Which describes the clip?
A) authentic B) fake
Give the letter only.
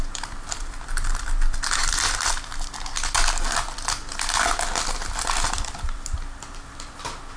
A